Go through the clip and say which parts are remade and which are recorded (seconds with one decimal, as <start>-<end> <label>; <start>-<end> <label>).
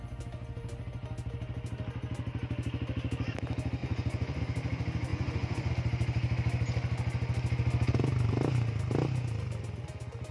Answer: 0.0-3.8 recorded; 3.8-4.4 remade; 4.4-5.1 recorded; 5.1-5.7 remade; 5.7-10.3 recorded